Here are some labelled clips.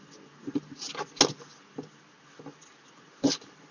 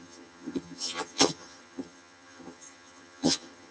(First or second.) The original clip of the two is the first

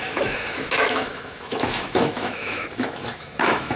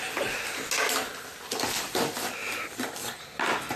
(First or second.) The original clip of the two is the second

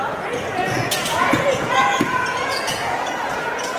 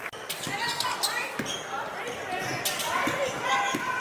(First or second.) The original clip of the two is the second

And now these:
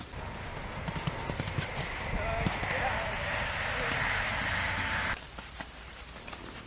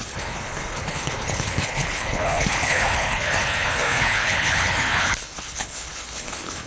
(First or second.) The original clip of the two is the first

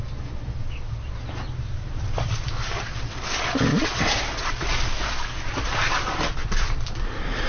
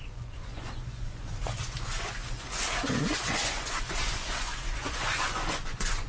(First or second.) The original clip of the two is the first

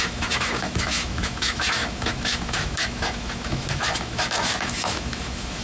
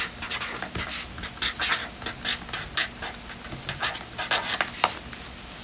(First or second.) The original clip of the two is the second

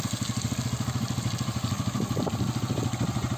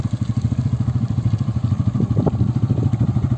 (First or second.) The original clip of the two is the first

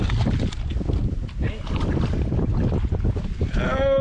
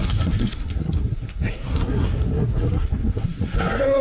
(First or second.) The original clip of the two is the first